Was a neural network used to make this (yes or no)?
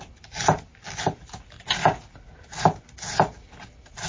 no